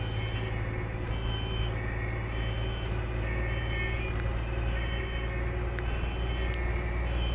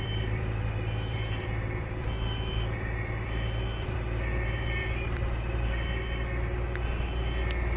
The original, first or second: first